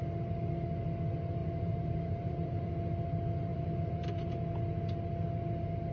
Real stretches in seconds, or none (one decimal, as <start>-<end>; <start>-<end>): 0.0-1.4; 2.7-3.5; 4.3-5.9